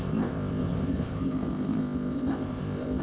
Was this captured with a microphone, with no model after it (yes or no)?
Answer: no